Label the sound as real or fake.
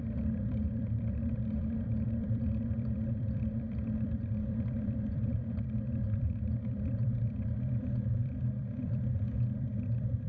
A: fake